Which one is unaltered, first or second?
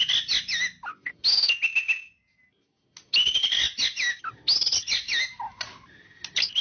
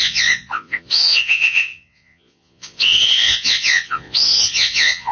first